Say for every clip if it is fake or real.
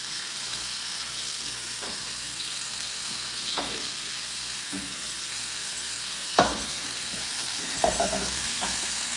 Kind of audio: fake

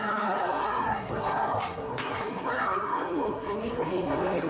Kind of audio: fake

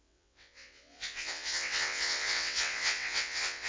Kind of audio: fake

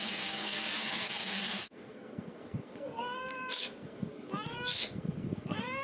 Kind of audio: fake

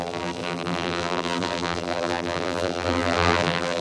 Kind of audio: fake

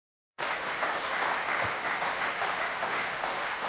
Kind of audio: fake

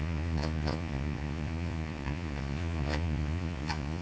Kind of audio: fake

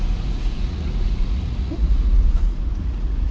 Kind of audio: fake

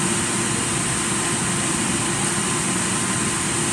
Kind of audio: real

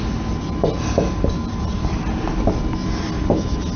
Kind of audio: real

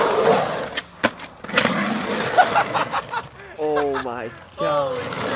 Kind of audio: real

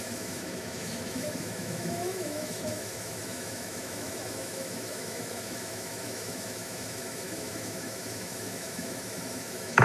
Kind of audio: fake